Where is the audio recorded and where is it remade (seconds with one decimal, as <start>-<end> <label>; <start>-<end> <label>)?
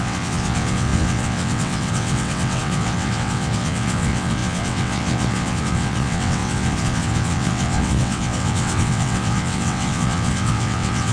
0.0-11.1 remade